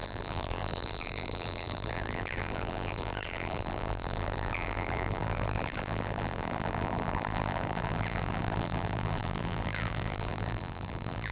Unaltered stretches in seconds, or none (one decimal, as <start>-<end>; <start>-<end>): none